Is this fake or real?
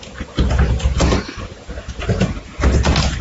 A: real